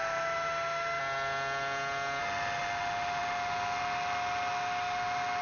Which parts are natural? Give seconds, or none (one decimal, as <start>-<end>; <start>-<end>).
1.0-2.2